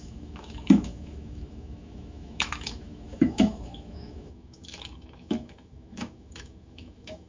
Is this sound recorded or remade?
remade